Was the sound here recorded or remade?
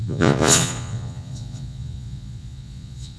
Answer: remade